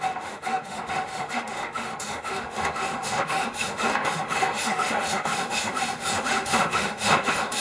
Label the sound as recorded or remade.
remade